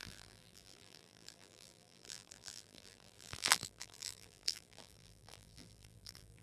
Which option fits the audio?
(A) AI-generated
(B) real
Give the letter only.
A